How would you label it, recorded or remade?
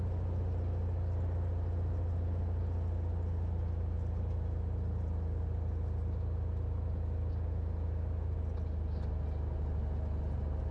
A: recorded